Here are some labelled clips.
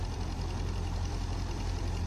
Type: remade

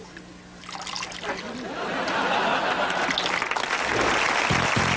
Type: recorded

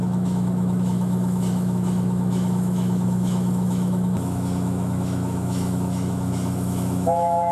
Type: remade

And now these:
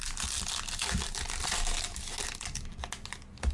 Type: recorded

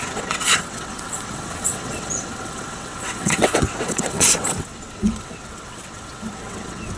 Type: remade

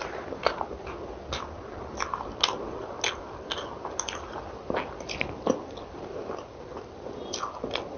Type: recorded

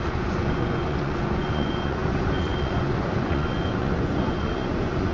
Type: remade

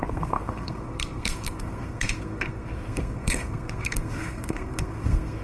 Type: remade